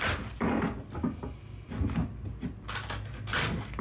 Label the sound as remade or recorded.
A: recorded